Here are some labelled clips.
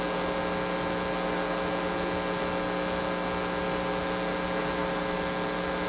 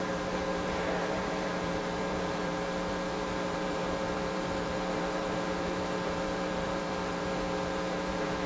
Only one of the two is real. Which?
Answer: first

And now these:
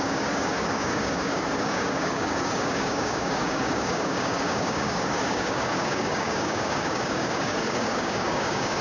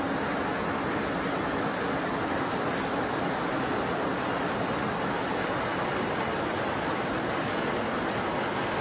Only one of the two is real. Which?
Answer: second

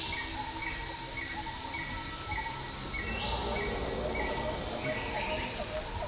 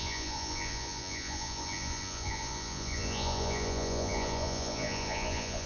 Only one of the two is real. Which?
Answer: first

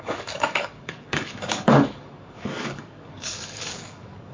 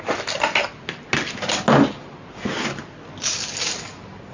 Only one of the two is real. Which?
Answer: second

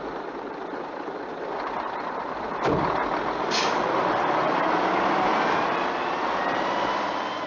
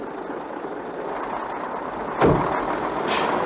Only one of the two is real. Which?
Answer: second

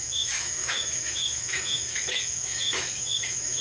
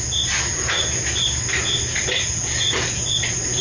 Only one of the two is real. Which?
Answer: second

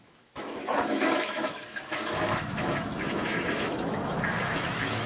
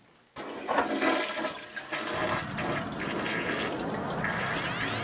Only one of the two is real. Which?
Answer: second